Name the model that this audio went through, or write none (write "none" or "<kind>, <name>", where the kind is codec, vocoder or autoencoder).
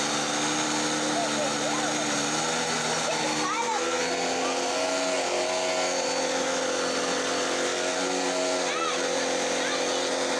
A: none